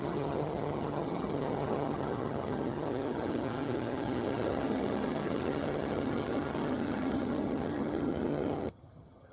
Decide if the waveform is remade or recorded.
remade